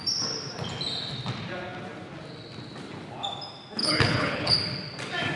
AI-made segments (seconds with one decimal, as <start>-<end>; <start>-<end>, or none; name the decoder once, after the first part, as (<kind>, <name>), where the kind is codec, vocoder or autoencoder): 3.8-4.5 (codec, HILCodec)